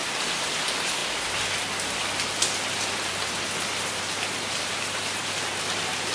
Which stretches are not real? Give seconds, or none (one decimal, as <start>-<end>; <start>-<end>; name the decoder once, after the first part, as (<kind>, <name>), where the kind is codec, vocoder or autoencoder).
none